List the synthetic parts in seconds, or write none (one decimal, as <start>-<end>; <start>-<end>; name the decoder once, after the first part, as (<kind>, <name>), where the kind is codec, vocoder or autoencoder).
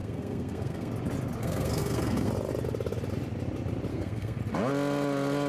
0.0-0.9 (codec, SNAC); 1.4-2.3; 3.9-4.4